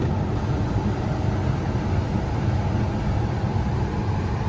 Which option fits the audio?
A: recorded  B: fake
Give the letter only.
A